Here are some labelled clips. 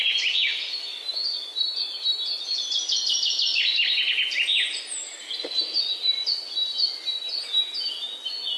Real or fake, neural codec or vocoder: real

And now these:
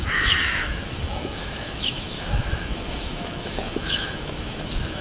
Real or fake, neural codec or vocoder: fake, autoencoder, DAC-VAE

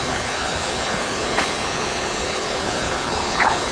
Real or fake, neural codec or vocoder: fake, codec, HILCodec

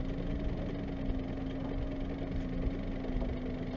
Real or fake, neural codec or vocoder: real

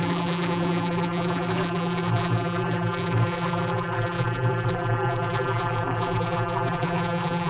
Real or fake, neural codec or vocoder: fake, vocoder, BigVGAN v2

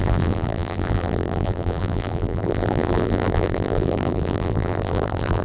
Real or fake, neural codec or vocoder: fake, vocoder, BigVGAN v2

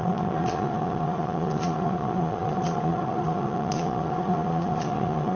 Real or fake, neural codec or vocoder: fake, vocoder, Vocos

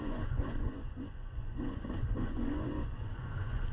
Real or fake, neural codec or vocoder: fake, vocoder, Vocos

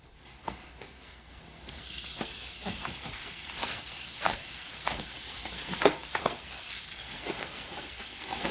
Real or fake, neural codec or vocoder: fake, codec, SNAC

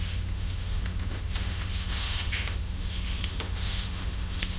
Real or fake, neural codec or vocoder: fake, autoencoder, DAC-VAE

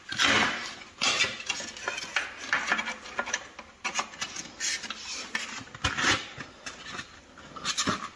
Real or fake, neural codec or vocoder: real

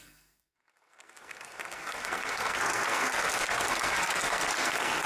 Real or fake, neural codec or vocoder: fake, codec, SNAC